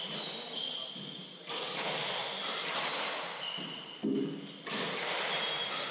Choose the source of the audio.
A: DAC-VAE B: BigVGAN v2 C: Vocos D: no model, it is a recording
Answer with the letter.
D